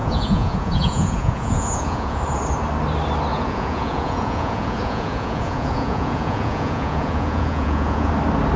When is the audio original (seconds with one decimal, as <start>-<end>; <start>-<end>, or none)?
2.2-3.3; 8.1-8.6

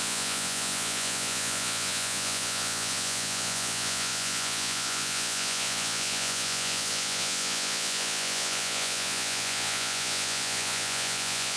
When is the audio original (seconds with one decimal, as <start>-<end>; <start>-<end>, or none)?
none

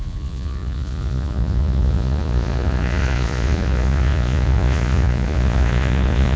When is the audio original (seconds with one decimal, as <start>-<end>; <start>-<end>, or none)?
none

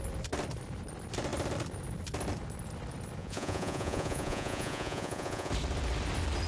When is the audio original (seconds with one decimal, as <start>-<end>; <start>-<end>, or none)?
0.0-3.2; 5.5-6.5

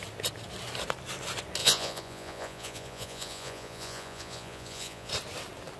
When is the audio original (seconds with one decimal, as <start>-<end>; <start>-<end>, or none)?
0.0-1.6; 5.1-5.8

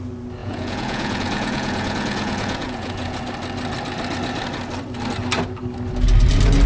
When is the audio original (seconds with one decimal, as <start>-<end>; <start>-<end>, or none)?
0.0-0.4; 3.2-6.7